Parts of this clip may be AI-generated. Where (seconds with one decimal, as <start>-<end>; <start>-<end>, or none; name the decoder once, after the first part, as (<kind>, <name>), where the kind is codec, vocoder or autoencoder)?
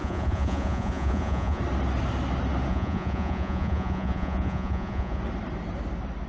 0.0-1.6 (vocoder, Vocos); 2.7-5.2